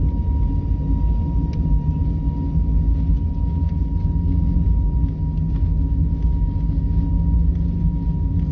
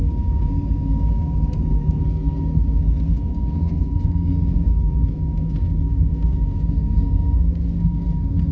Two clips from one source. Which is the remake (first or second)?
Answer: second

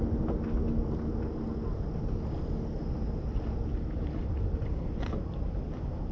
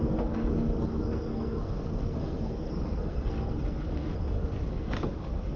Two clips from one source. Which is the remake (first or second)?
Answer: second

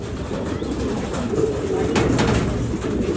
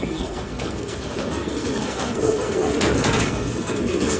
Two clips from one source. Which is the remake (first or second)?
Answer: second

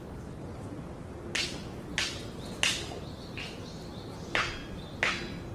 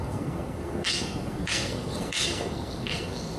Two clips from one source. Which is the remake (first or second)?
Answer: second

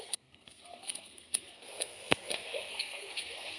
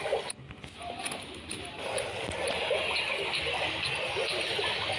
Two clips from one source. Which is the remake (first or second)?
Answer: first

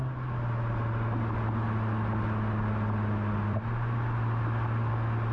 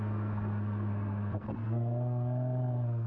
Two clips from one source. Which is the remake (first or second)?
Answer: second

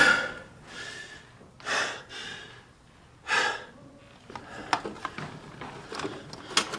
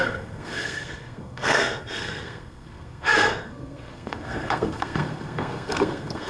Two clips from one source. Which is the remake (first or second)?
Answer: second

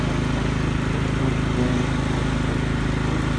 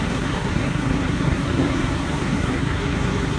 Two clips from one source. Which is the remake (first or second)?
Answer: second